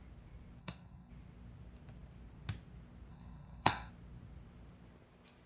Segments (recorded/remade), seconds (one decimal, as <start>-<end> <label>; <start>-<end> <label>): 0.0-0.6 recorded; 0.6-1.1 remade; 1.1-3.1 recorded; 3.1-3.9 remade; 3.9-5.5 recorded